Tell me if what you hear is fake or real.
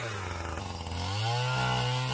real